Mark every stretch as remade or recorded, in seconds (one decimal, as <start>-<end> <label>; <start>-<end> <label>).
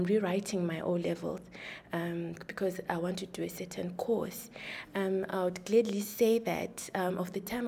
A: 0.0-5.3 recorded; 5.3-7.1 remade; 7.1-7.7 recorded